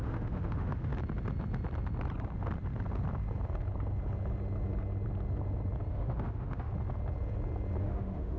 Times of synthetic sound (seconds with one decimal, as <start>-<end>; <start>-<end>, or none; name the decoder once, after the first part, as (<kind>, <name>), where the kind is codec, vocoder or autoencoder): 0.0-0.9 (autoencoder, DAC-VAE); 5.9-6.7; 7.8-8.4